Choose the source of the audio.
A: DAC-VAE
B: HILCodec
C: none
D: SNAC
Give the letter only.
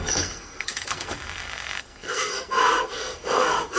D